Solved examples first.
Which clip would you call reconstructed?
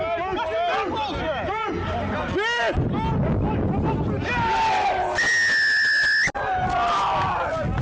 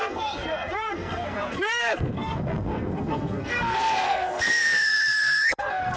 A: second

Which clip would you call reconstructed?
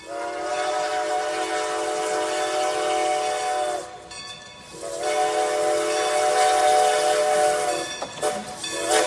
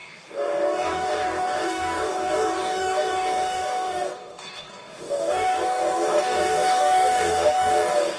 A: second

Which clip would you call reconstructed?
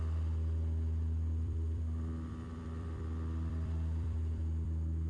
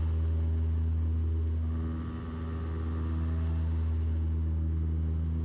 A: first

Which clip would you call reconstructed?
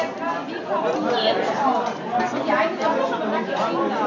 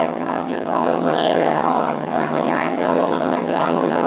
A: second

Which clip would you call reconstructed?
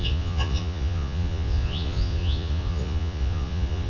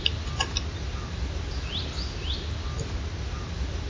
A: first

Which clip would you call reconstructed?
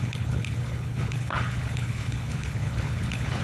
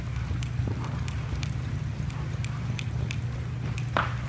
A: first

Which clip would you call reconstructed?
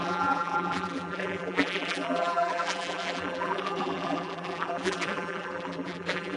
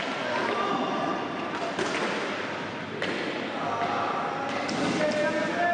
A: first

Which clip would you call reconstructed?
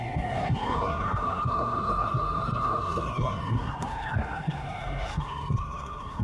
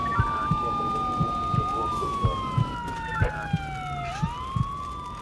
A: first